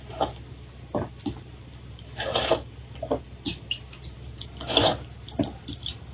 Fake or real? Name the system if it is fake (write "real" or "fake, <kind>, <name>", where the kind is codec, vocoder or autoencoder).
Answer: real